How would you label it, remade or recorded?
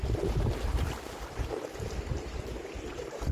recorded